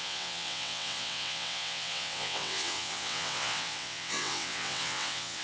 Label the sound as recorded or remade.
remade